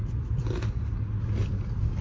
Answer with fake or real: real